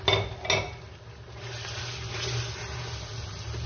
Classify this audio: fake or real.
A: real